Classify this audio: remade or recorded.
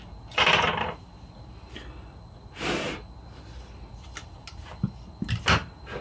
recorded